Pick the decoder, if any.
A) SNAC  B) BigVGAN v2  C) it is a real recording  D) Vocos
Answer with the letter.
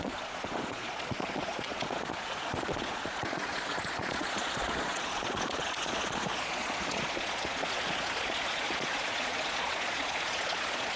D